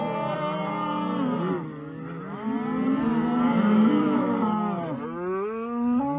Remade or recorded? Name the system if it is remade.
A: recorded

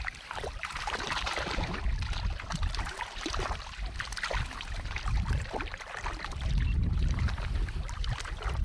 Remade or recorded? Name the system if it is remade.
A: remade, vocoder, BigVGAN v2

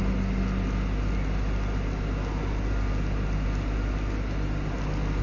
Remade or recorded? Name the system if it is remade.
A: recorded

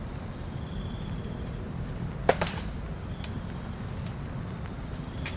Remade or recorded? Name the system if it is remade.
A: remade, vocoder, BigVGAN v2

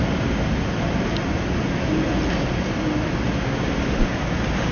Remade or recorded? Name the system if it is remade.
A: recorded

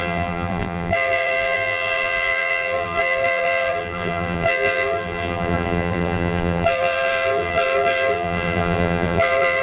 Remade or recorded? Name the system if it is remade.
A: remade, vocoder, BigVGAN v2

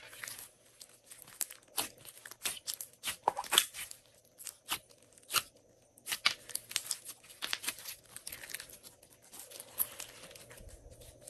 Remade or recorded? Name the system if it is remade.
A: recorded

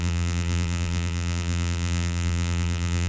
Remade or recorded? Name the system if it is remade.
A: remade, vocoder, BigVGAN v2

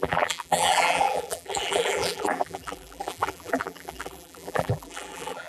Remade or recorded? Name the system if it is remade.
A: remade, vocoder, BigVGAN v2